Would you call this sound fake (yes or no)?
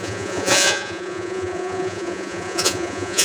yes